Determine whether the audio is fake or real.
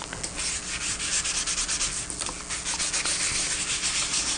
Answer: real